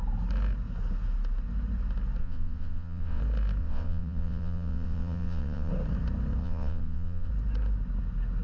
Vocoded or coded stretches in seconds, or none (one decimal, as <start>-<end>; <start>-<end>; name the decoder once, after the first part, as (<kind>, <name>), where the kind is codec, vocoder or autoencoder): 2.2-3.2 (vocoder, WaveNeXt); 3.6-5.7; 6.4-7.3